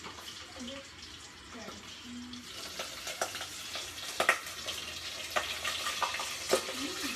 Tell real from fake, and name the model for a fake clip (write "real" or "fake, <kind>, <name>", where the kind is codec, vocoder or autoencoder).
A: real